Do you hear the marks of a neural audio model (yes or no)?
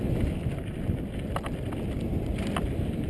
no